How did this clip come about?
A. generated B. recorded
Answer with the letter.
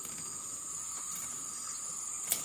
B